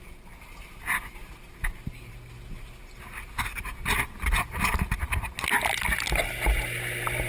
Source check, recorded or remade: recorded